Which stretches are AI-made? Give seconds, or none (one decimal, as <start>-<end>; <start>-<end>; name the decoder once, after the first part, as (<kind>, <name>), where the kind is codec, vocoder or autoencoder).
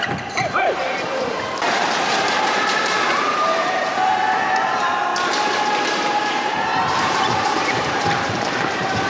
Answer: 0.0-5.1 (vocoder, BigVGAN v2); 5.9-9.1